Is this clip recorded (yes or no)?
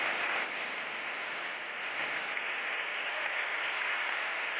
yes